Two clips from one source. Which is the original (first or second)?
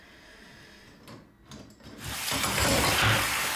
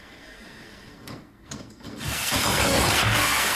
first